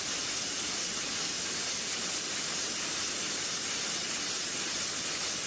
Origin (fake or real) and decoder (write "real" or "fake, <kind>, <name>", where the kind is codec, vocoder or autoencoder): real